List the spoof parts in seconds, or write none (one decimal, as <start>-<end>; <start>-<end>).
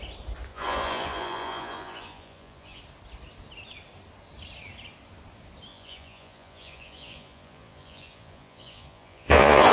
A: 0.5-2.8; 5.7-9.7